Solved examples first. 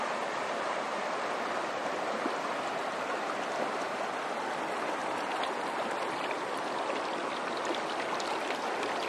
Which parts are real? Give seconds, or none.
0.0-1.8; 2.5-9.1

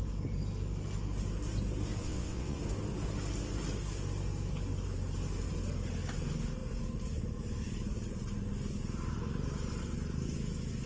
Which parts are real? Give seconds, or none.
0.0-2.0; 2.6-10.9

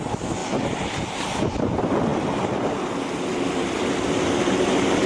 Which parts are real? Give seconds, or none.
0.0-5.1

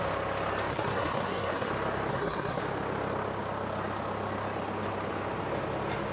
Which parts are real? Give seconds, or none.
0.0-0.7; 1.7-2.1; 2.6-6.1

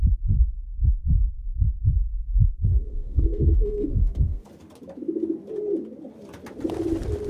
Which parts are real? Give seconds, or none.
0.0-1.0; 4.5-7.3

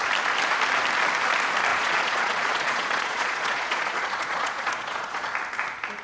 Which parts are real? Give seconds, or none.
0.0-1.7; 5.3-6.0